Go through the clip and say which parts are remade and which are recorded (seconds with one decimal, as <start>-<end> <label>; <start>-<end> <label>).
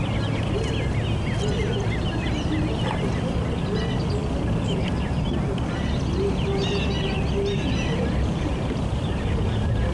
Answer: 0.0-9.9 recorded